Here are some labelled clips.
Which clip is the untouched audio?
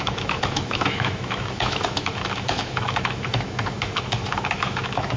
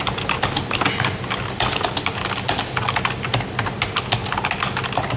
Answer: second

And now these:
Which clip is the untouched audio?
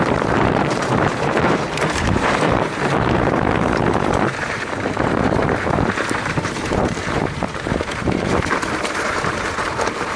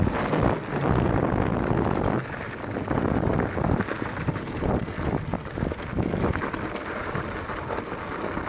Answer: second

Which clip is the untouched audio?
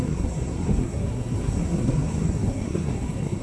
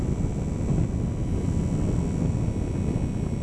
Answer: second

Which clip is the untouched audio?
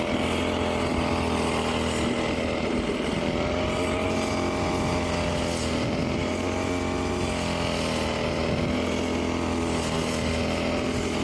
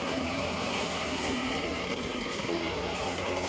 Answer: first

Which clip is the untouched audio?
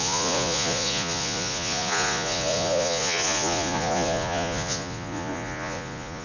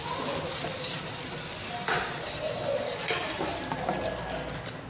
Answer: second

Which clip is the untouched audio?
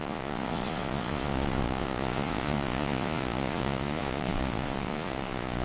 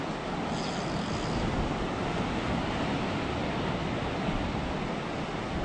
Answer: second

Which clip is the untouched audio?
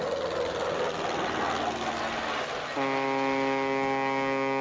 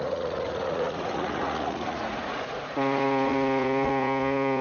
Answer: first